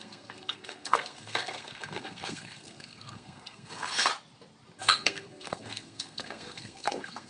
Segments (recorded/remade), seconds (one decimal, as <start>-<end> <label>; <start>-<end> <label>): 0.0-4.1 remade; 4.1-4.8 recorded; 4.8-7.3 remade